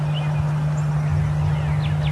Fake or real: real